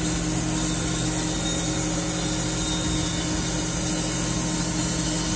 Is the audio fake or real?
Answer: real